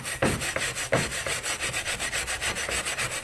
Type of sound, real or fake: fake